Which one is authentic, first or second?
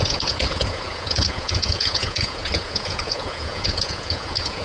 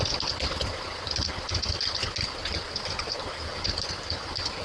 second